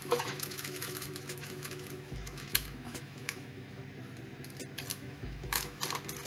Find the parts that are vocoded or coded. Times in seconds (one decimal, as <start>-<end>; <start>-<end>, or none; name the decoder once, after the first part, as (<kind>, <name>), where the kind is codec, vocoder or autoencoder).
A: 0.0-3.8 (autoencoder, DAC-VAE); 4.9-5.8